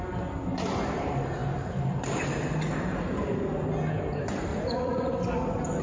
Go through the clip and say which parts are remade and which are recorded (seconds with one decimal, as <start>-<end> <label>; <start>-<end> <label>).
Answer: 0.0-4.5 recorded; 4.5-5.1 remade; 5.1-5.8 recorded